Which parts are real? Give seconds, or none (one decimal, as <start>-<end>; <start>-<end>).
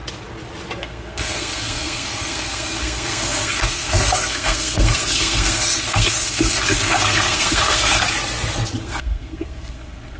0.0-0.8; 8.0-8.8